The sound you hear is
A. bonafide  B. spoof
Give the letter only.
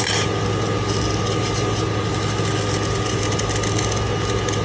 A